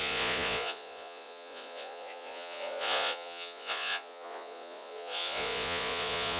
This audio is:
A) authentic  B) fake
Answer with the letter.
B